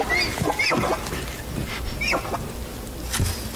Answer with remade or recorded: recorded